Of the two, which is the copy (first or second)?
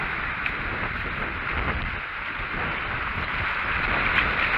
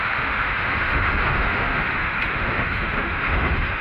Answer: second